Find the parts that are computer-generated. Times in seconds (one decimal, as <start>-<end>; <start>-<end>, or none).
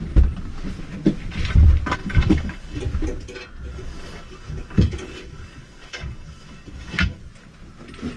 2.0-2.8; 3.7-7.2